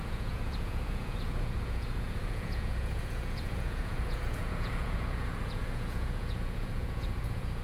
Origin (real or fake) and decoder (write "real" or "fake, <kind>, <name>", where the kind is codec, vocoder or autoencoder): fake, vocoder, Vocos